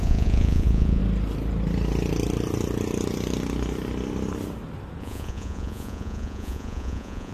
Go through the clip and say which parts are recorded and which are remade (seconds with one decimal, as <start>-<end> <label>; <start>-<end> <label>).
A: 0.0-1.0 remade; 1.0-5.0 recorded; 5.0-7.3 remade